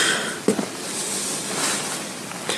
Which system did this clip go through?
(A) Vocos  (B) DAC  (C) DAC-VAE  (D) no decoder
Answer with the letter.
D